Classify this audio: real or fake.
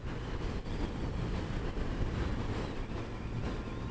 real